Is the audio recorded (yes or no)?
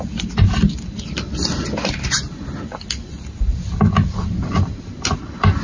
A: yes